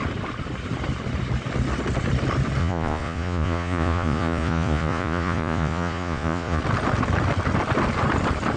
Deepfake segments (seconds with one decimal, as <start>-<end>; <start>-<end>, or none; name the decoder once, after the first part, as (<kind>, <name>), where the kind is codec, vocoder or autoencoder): 2.6-6.6 (vocoder, Vocos)